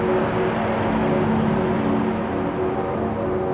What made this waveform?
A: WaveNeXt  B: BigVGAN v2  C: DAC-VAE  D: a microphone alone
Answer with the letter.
D